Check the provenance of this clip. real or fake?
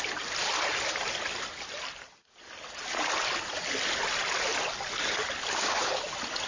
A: real